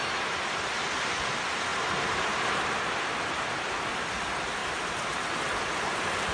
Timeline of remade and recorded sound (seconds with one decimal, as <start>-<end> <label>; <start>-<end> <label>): 0.0-0.8 remade; 0.8-1.7 recorded; 1.7-3.9 remade; 3.9-4.6 recorded; 4.6-5.2 remade; 5.2-6.3 recorded